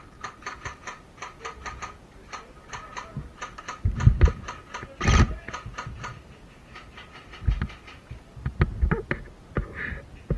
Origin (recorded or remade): recorded